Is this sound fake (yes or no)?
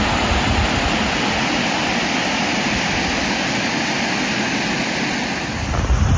no